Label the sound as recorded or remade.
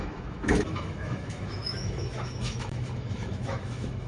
remade